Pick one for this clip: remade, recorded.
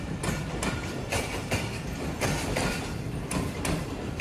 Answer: remade